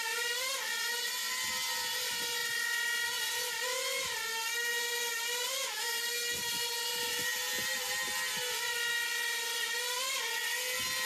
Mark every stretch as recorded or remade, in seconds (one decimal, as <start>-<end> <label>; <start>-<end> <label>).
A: 0.0-11.1 recorded